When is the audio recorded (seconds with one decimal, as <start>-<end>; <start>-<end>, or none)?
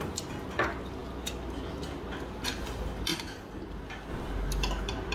0.0-5.1